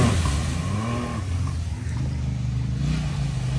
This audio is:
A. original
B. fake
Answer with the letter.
A